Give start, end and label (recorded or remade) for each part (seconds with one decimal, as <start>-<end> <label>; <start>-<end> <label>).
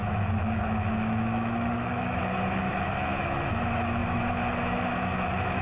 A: 0.0-5.6 remade